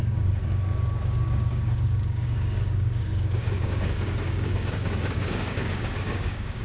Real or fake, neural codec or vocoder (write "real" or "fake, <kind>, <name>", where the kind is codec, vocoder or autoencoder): fake, codec, DAC